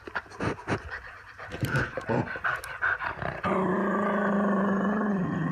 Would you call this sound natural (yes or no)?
no